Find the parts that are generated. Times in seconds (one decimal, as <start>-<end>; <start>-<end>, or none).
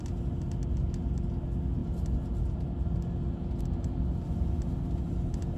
none